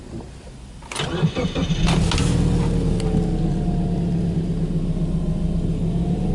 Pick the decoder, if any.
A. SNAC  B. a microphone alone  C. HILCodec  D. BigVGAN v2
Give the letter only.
B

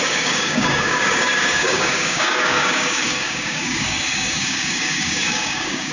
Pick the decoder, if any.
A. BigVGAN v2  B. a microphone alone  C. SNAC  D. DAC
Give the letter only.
D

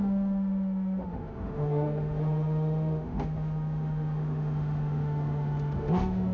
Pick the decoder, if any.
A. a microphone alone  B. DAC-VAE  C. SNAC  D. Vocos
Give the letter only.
B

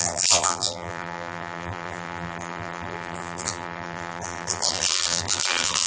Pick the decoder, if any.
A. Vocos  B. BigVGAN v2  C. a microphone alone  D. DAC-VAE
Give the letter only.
B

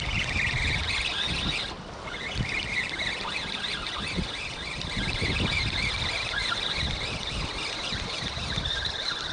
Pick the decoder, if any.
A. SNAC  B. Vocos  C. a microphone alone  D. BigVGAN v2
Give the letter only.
C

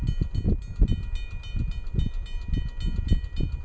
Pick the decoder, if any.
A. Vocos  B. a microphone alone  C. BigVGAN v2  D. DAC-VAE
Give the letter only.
B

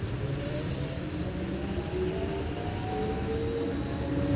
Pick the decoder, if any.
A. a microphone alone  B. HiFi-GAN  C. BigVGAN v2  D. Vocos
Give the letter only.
A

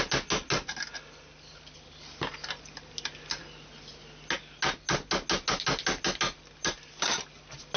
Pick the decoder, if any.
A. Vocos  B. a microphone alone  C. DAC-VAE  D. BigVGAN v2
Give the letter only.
B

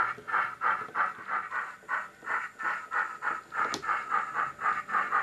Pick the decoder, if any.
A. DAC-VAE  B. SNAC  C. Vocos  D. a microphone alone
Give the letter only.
D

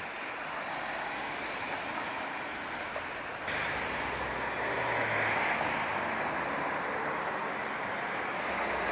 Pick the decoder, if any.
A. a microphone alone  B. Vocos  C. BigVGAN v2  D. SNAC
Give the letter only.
A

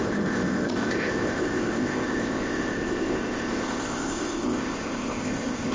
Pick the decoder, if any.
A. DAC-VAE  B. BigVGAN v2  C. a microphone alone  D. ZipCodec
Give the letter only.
D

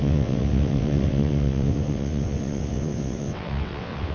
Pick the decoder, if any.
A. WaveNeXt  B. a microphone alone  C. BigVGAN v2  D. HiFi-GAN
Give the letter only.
A